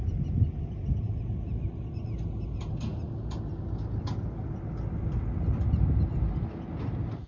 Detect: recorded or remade recorded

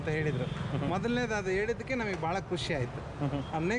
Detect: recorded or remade recorded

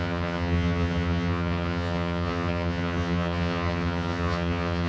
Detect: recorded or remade remade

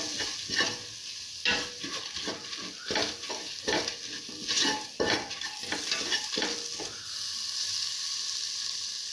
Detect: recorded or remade recorded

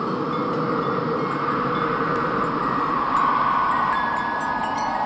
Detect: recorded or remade recorded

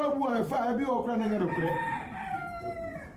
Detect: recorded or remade remade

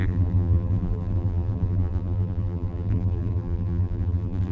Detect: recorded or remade remade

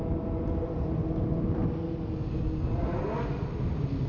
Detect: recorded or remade recorded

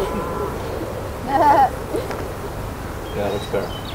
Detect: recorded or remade remade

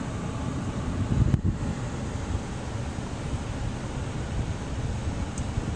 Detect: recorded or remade recorded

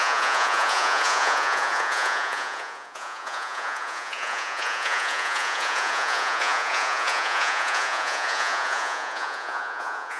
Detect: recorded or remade remade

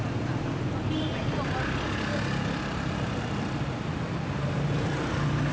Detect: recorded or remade recorded